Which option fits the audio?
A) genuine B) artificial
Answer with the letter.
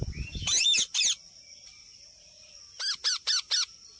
A